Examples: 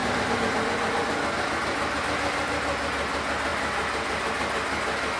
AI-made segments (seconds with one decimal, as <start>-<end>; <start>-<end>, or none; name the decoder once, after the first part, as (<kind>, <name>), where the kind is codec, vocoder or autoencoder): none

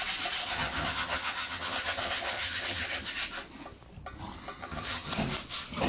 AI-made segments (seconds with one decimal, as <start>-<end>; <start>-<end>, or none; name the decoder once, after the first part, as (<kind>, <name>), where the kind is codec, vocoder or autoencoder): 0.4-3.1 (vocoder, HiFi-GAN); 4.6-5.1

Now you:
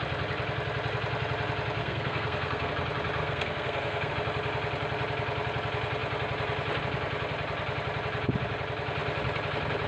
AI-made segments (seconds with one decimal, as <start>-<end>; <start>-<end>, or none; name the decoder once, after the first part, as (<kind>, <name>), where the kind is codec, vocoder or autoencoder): 1.8-2.7 (codec, SNAC); 3.2-4.1

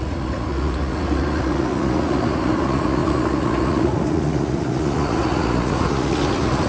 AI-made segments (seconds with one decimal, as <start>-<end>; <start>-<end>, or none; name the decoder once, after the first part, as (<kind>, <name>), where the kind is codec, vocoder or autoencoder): 0.0-6.7 (vocoder, Vocos)

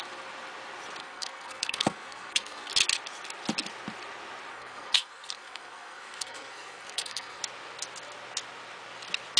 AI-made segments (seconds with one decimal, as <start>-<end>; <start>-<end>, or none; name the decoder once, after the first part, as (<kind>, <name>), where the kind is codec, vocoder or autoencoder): 1.0-2.7 (codec, SNAC); 4.5-7.4

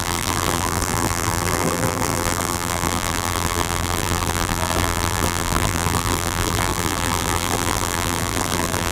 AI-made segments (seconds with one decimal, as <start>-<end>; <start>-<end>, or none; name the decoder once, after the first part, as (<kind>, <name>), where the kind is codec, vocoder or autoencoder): 0.0-8.9 (vocoder, BigVGAN v2)

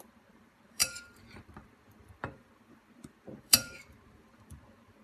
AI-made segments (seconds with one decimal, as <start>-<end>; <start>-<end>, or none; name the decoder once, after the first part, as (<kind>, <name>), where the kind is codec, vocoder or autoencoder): 0.0-5.0 (vocoder, BigVGAN v2)